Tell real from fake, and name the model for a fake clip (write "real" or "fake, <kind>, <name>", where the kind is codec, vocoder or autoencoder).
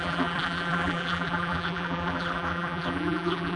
fake, vocoder, BigVGAN v2